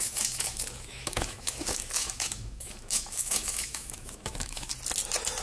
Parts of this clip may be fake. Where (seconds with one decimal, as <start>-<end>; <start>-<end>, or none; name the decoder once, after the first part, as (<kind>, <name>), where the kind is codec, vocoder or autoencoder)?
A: 0.0-4.7 (autoencoder, DAC-VAE)